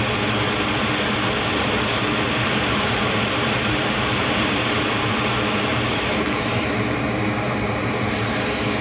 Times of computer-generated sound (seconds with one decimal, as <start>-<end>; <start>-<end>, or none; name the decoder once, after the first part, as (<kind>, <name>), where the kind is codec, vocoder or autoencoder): 1.5-4.8 (vocoder, BigVGAN v2); 5.7-7.3